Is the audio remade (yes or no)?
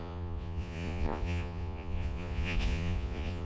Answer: yes